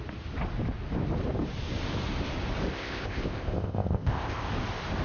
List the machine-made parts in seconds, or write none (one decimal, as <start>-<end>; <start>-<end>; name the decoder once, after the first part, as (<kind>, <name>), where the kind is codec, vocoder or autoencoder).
2.7-4.5 (codec, ZipCodec)